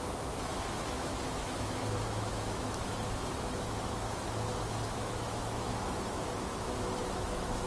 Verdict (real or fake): fake